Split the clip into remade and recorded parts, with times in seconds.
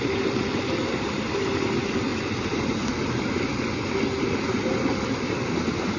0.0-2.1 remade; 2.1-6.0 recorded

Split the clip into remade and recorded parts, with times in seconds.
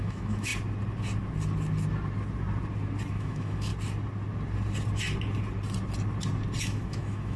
0.0-0.5 remade; 0.5-3.1 recorded; 3.1-3.7 remade; 3.7-6.6 recorded; 6.6-7.4 remade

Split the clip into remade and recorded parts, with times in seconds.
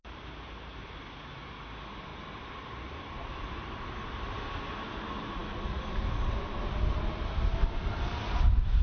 0.0-8.8 recorded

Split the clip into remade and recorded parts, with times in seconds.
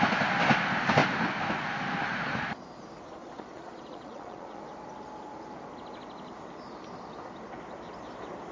0.0-3.2 recorded; 3.2-4.6 remade; 4.6-8.5 recorded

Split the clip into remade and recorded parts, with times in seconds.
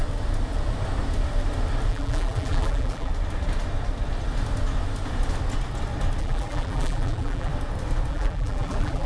0.0-1.9 recorded; 1.9-3.1 remade; 3.1-6.2 recorded; 6.2-7.5 remade; 7.5-8.1 recorded; 8.1-9.1 remade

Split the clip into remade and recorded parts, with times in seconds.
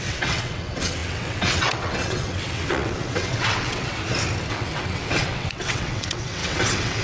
0.0-3.9 remade; 3.9-4.5 recorded; 4.5-7.0 remade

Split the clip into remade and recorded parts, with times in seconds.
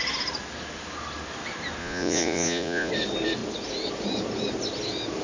0.0-1.8 recorded; 1.8-2.9 remade; 2.9-5.2 recorded